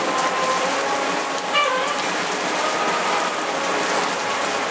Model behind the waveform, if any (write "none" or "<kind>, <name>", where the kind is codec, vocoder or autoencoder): none